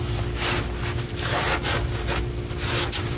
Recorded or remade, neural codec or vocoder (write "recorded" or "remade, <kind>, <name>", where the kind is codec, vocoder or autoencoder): recorded